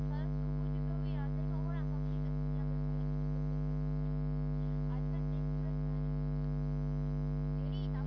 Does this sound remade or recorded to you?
recorded